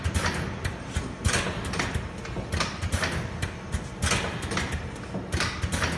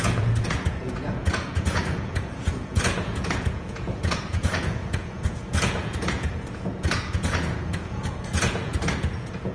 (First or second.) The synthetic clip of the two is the second